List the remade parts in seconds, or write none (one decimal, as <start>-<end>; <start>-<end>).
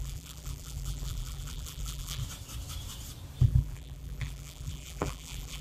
0.0-2.2; 3.4-5.6